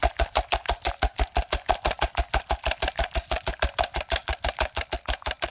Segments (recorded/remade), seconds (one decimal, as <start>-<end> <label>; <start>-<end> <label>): 0.0-5.5 recorded